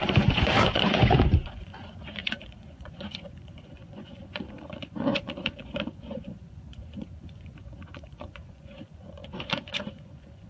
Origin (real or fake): fake